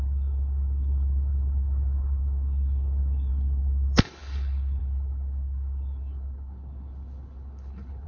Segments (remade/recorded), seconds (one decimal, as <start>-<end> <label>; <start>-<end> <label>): 0.0-8.1 remade